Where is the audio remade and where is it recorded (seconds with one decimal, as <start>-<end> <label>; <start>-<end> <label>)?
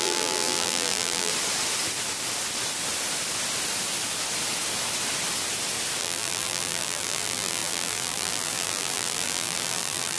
0.0-1.3 remade; 1.3-6.0 recorded; 6.0-10.2 remade